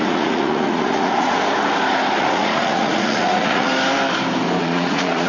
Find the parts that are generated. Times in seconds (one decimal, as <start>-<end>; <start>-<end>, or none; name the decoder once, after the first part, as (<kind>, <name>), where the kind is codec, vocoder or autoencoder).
0.0-1.4 (vocoder, Vocos); 2.2-3.7; 4.6-5.3